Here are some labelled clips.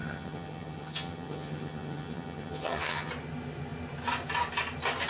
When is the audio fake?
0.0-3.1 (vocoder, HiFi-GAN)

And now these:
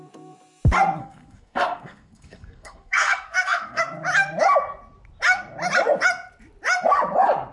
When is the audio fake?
1.0-3.8 (codec, SNAC)

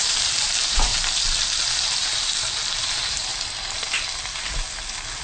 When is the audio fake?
0.0-0.9 (vocoder, BigVGAN v2); 2.8-3.3